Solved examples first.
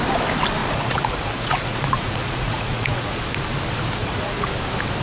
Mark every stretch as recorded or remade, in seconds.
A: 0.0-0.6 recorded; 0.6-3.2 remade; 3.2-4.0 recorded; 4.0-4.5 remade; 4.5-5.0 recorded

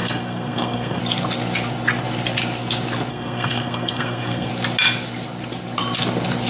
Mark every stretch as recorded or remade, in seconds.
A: 0.0-1.0 remade; 1.0-3.1 recorded; 3.1-4.5 remade; 4.5-6.5 recorded

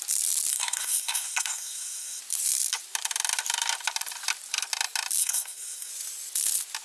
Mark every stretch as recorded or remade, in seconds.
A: 0.0-0.5 recorded; 0.5-2.2 remade; 2.2-5.2 recorded; 5.2-5.9 remade; 5.9-6.8 recorded

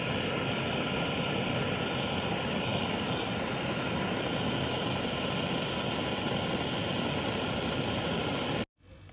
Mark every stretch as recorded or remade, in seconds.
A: 0.0-9.1 recorded

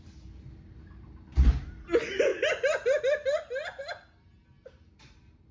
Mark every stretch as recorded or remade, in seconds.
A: 0.0-5.5 recorded

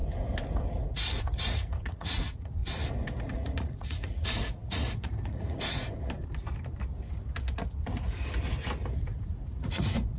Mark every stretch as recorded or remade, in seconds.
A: 0.0-1.2 recorded; 1.2-2.6 remade; 2.6-3.2 recorded; 3.2-5.9 remade; 5.9-9.0 recorded; 9.0-10.2 remade

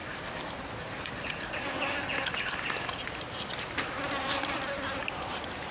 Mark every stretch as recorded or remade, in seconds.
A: 0.0-1.0 remade; 1.0-5.7 recorded

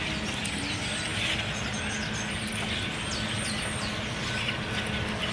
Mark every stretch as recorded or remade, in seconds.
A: 0.0-5.3 recorded